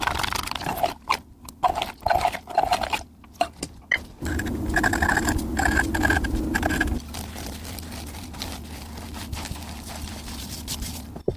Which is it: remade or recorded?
recorded